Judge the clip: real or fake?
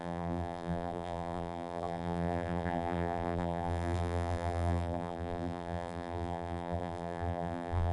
fake